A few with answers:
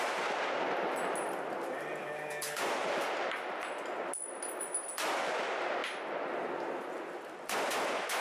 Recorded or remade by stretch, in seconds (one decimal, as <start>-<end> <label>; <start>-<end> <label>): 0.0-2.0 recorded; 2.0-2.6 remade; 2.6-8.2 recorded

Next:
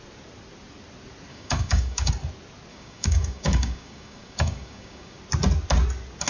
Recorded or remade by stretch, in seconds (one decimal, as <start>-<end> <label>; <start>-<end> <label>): 0.0-1.3 recorded; 1.3-2.1 remade; 2.1-2.7 recorded; 2.7-5.2 remade; 5.2-6.3 recorded

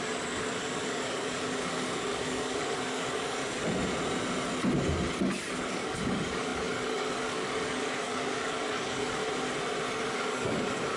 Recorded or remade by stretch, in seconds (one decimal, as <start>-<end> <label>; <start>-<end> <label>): 0.0-3.4 remade; 3.4-5.4 recorded; 5.4-9.2 remade; 9.2-10.1 recorded; 10.1-11.0 remade